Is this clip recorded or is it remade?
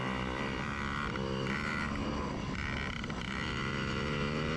recorded